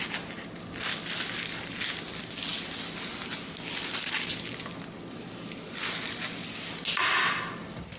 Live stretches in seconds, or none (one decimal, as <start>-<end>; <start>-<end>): 0.0-8.0